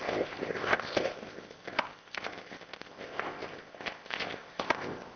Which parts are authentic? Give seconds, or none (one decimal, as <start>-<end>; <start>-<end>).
none